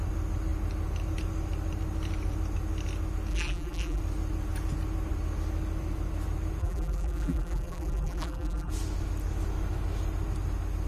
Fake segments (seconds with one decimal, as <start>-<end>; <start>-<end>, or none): 3.3-4.0; 6.6-8.7